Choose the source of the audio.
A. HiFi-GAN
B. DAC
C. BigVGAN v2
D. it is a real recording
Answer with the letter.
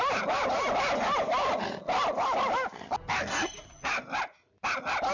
D